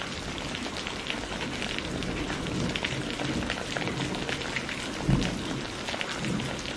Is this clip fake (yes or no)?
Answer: no